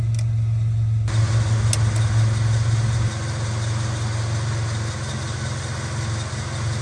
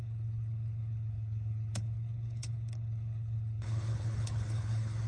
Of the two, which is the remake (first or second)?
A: second